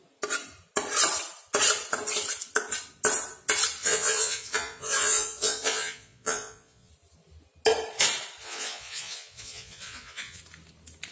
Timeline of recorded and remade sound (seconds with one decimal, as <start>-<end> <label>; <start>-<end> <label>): 0.0-3.8 recorded; 3.8-6.9 remade; 6.9-8.4 recorded; 8.4-10.4 remade; 10.4-11.1 recorded